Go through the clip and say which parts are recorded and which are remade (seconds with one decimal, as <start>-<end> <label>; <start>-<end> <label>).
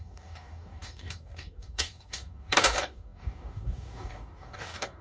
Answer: 0.0-5.0 remade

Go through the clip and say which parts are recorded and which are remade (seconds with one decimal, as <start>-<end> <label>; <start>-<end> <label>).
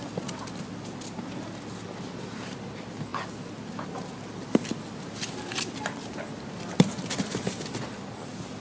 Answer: 0.0-8.6 recorded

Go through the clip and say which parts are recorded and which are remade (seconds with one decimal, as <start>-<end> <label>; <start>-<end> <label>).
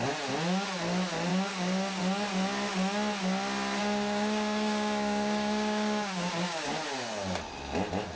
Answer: 0.0-1.3 recorded; 1.3-2.0 remade; 2.0-3.8 recorded; 3.8-6.7 remade; 6.7-8.2 recorded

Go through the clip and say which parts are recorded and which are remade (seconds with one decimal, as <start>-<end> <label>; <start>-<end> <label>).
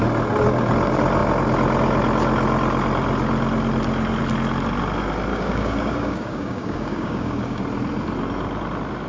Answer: 0.0-5.3 recorded; 5.3-7.6 remade; 7.6-9.1 recorded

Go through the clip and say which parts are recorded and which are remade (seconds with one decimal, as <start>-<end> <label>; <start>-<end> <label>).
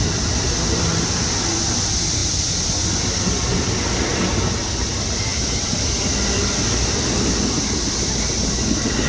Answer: 0.0-9.1 recorded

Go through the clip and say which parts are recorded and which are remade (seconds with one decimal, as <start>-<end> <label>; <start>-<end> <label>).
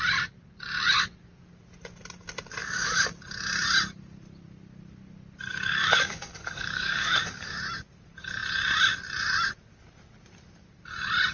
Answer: 0.0-2.6 recorded; 2.6-3.1 remade; 3.1-5.5 recorded; 5.5-7.6 remade; 7.6-11.3 recorded